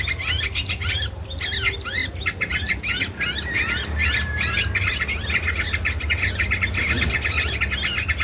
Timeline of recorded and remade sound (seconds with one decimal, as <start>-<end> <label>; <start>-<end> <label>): 0.0-8.2 recorded